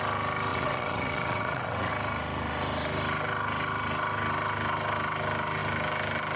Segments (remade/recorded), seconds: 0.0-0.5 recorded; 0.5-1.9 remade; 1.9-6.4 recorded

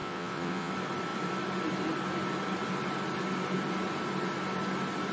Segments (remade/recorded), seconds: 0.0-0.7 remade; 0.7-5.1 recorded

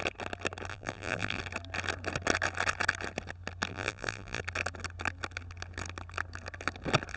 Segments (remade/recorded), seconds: 0.0-0.7 recorded; 0.7-1.4 remade; 1.4-3.7 recorded; 3.7-4.4 remade; 4.4-7.2 recorded

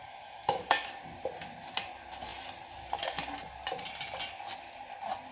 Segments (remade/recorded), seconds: 0.0-0.9 remade; 0.9-5.3 recorded

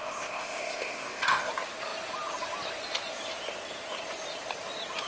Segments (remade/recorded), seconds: 0.0-1.5 remade; 1.5-5.1 recorded

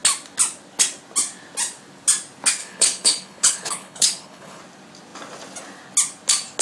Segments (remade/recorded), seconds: 0.0-2.6 recorded; 2.6-4.6 remade; 4.6-6.6 recorded

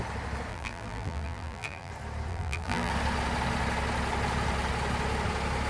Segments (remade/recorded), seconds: 0.0-0.5 recorded; 0.5-1.9 remade; 1.9-2.3 recorded; 2.3-2.9 remade; 2.9-5.7 recorded

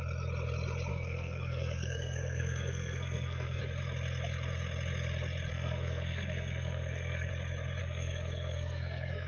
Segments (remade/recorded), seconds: 0.0-0.9 recorded; 0.9-3.6 remade; 3.6-5.5 recorded; 5.5-7.3 remade; 7.3-7.8 recorded; 7.8-9.3 remade